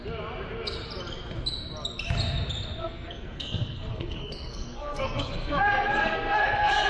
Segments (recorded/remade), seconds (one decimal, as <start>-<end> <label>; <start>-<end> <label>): 0.0-2.8 recorded; 2.8-6.9 remade